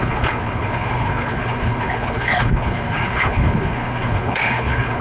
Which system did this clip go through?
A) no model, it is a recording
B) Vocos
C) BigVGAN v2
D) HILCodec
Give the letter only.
D